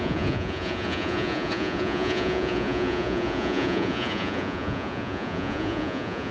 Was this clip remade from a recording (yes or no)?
yes